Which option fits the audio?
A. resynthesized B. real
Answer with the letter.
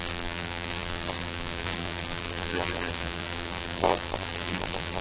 A